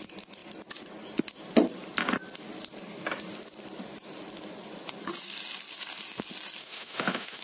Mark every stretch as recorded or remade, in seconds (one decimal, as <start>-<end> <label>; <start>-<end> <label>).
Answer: 0.0-6.6 recorded; 6.6-7.4 remade